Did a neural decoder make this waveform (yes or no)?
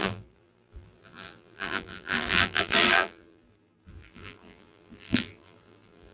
yes